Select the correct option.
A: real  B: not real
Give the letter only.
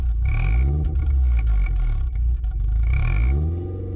A